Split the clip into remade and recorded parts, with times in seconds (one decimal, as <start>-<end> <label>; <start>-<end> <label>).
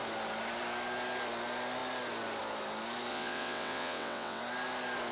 0.0-3.1 recorded; 3.1-4.4 remade; 4.4-5.1 recorded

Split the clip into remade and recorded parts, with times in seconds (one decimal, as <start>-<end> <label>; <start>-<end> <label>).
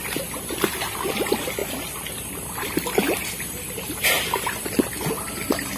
0.0-1.6 recorded; 1.6-4.6 remade; 4.6-5.8 recorded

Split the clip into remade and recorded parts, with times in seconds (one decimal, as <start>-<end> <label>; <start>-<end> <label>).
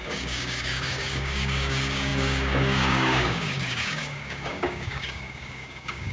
0.0-6.1 remade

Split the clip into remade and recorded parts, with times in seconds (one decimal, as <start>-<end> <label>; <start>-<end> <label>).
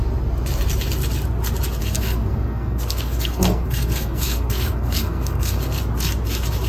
0.0-1.8 recorded; 1.8-5.8 remade; 5.8-6.7 recorded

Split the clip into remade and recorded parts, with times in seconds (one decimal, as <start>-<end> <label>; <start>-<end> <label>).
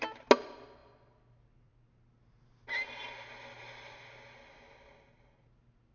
0.0-5.9 recorded